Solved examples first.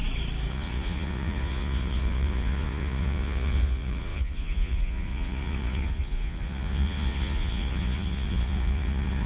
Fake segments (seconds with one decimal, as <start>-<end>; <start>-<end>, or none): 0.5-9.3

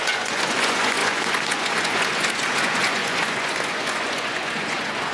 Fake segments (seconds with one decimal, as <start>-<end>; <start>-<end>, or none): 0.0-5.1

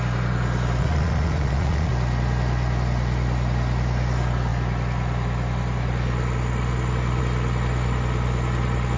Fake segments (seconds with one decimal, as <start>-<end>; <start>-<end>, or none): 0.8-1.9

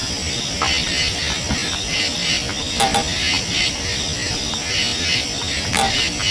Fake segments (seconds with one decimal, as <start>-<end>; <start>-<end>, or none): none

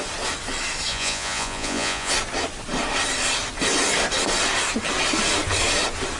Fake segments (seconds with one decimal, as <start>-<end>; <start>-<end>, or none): 0.9-2.1